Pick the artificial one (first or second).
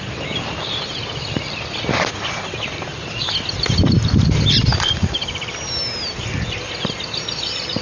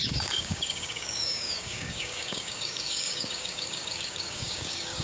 second